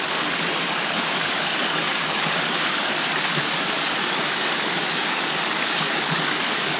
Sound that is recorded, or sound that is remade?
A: remade